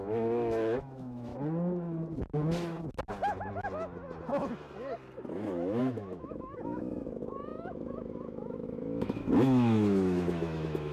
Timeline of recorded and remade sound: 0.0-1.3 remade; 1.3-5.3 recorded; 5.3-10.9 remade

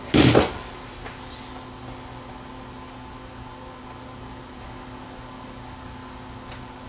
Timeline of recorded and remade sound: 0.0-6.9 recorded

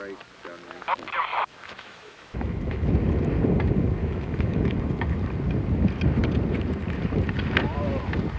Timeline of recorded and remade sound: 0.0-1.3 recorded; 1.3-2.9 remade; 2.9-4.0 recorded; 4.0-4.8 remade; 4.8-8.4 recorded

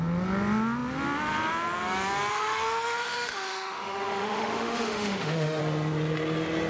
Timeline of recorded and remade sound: 0.0-2.3 recorded; 2.3-5.6 remade; 5.6-6.7 recorded